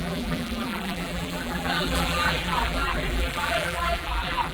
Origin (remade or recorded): remade